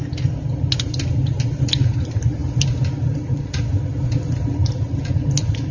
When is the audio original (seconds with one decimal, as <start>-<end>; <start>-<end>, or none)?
0.0-5.7